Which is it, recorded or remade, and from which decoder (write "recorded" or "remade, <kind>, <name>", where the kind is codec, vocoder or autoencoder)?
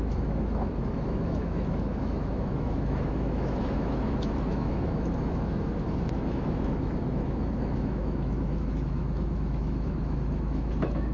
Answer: remade, autoencoder, DAC-VAE